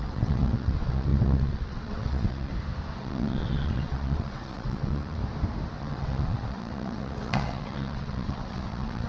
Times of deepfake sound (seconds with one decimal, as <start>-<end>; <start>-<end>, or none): 0.0-2.5; 3.0-5.2; 5.8-9.1